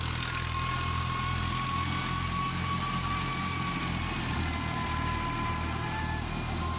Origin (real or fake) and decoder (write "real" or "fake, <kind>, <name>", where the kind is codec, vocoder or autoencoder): real